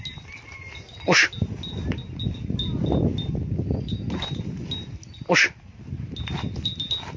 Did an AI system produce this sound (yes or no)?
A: no